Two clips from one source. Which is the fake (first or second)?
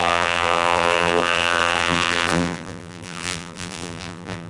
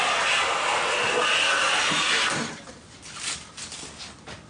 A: first